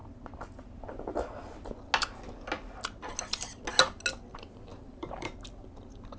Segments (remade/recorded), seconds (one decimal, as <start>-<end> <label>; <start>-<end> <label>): 0.0-4.7 recorded; 4.7-5.3 remade; 5.3-6.2 recorded